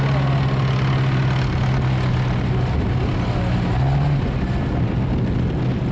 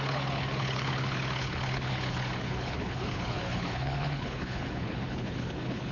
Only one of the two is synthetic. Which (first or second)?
second